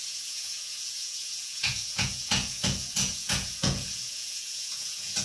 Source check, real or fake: fake